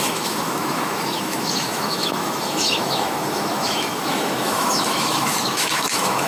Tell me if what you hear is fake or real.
fake